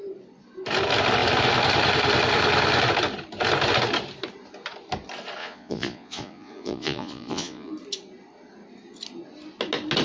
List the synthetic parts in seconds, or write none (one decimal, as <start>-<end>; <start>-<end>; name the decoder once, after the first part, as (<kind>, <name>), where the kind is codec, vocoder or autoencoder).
5.4-7.7 (vocoder, Vocos)